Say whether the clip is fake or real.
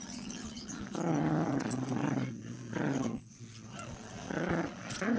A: fake